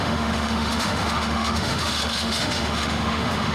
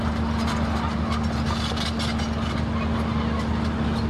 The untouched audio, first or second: second